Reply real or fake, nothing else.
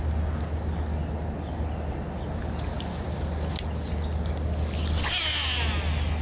real